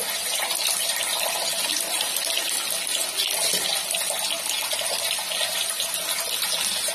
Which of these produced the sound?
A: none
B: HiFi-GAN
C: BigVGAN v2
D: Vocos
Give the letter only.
A